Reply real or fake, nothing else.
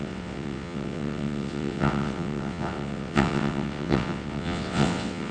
fake